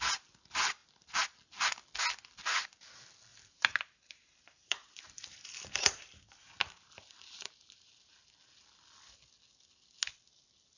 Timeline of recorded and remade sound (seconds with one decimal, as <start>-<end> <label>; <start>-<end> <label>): 0.0-3.3 recorded; 3.3-8.1 remade; 8.1-10.8 recorded